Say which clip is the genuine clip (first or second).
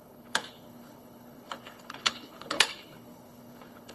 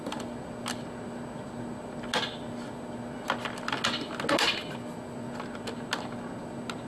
second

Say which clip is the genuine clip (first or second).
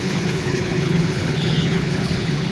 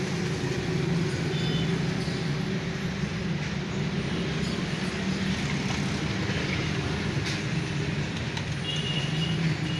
second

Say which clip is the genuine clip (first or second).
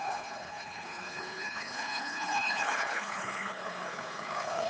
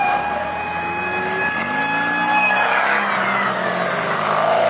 second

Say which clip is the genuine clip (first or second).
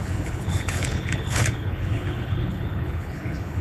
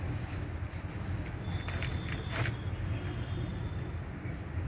second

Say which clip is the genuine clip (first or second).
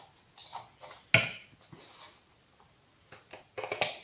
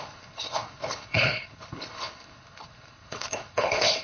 first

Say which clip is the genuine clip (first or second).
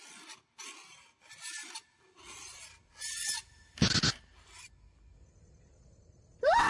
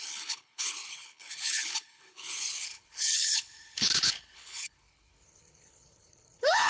first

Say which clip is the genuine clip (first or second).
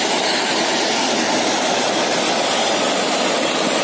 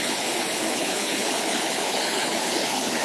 first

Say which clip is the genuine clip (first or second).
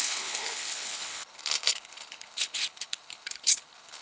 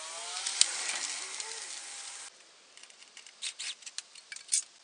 second